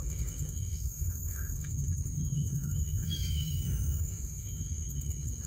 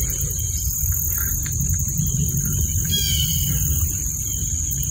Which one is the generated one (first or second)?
first